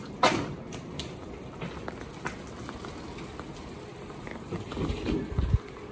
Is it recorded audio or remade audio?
recorded